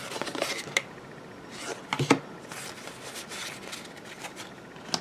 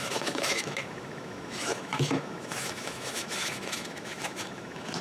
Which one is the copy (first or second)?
second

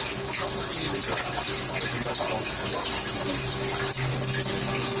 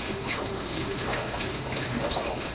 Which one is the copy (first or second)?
second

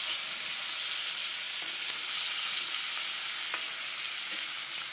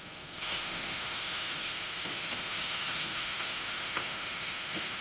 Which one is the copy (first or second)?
second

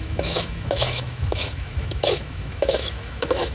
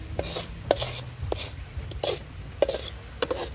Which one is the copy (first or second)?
first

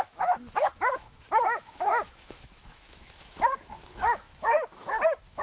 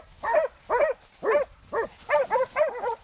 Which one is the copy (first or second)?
first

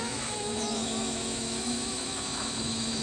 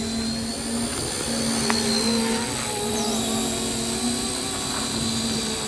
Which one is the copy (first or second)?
first